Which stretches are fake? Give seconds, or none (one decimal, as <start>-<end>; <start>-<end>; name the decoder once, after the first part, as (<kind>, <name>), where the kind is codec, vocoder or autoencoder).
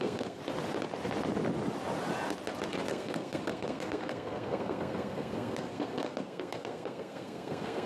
0.0-0.4 (codec, SNAC); 2.9-7.9